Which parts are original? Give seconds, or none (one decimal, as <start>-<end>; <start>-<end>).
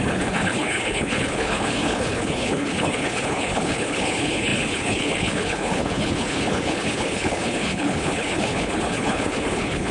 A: none